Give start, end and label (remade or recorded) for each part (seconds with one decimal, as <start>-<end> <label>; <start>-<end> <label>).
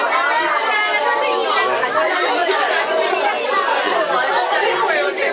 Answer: 0.0-2.4 recorded; 2.4-3.9 remade; 3.9-5.3 recorded